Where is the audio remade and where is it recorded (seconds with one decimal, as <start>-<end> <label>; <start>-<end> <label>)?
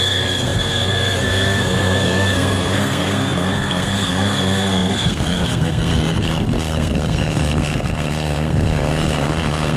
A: 0.0-9.8 remade